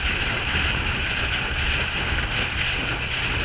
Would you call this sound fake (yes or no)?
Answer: no